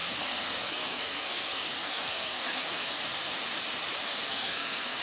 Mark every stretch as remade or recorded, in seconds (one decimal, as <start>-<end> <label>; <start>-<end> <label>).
0.0-3.0 remade; 3.0-4.1 recorded; 4.1-5.0 remade